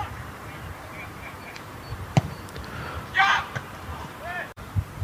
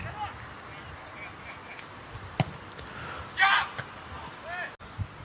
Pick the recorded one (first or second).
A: second